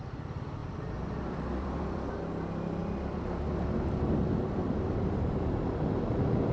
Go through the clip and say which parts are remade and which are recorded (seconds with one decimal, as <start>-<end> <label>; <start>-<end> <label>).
0.0-0.6 recorded; 0.6-2.1 remade; 2.1-2.8 recorded; 2.8-5.9 remade; 5.9-6.5 recorded